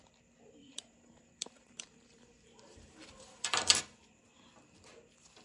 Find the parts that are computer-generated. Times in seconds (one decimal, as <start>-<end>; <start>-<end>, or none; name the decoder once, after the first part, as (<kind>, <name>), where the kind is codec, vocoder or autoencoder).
0.6-3.8 (vocoder, BigVGAN v2)